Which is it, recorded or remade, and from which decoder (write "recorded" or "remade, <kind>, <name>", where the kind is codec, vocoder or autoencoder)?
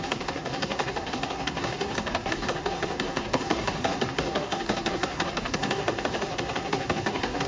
remade, codec, SNAC